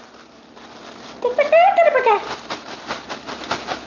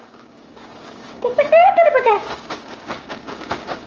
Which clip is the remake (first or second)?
second